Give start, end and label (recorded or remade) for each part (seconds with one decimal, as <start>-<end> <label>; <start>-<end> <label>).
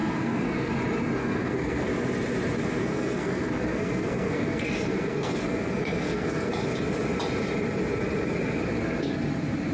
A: 0.0-0.7 remade; 0.7-1.2 recorded; 1.2-1.9 remade; 1.9-2.8 recorded; 2.8-6.5 remade; 6.5-9.7 recorded